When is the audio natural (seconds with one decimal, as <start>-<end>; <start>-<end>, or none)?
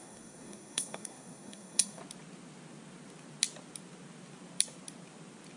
2.0-5.6